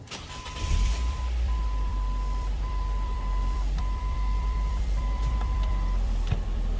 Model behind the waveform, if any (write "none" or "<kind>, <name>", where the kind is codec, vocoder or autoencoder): vocoder, BigVGAN v2